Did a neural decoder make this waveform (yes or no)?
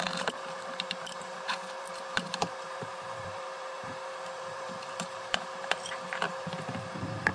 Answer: yes